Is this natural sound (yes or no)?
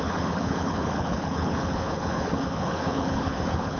no